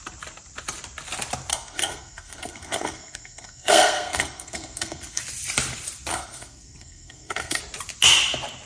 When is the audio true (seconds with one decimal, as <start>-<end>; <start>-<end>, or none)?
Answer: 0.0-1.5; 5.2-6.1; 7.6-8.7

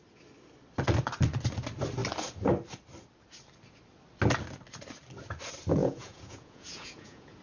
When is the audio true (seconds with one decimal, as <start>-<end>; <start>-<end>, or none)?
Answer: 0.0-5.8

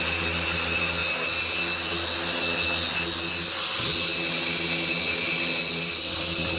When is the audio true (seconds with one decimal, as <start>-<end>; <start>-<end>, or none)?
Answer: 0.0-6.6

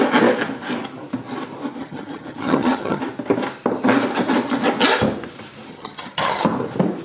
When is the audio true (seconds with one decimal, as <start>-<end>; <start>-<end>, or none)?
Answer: 0.0-1.8; 3.0-5.7; 6.4-7.0